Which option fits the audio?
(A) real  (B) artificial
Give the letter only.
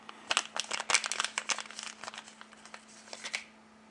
A